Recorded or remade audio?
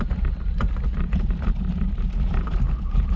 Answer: recorded